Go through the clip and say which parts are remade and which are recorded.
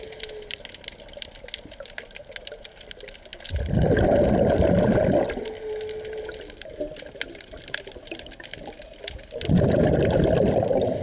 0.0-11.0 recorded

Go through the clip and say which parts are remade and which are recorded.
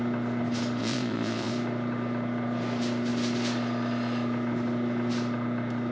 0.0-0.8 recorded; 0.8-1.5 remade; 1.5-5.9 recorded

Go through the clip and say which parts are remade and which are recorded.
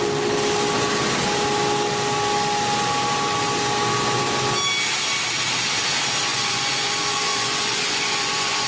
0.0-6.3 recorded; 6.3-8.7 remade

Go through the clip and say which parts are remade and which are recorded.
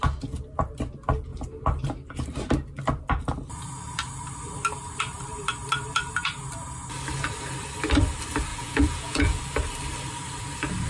0.0-8.5 recorded; 8.5-9.4 remade; 9.4-10.9 recorded